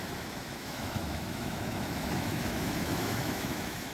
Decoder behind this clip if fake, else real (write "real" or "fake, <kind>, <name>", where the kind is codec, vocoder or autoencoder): fake, autoencoder, DAC-VAE